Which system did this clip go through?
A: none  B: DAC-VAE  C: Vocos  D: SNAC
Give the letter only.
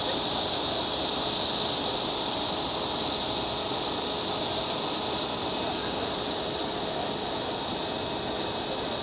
A